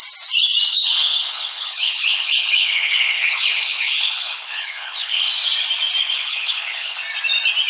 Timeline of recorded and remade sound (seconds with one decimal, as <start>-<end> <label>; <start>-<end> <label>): 0.0-0.7 recorded; 0.7-5.3 remade; 5.3-6.0 recorded; 6.0-7.0 remade; 7.0-7.7 recorded